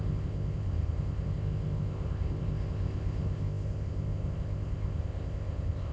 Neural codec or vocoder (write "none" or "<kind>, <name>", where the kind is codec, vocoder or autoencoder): codec, ZipCodec